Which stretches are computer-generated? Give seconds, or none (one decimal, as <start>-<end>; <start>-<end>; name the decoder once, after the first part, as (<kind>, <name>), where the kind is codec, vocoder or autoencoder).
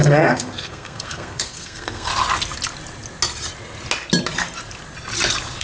0.0-2.1 (codec, SNAC)